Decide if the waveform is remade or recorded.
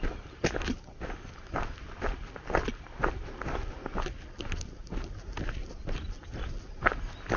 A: recorded